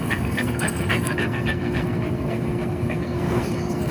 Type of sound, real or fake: fake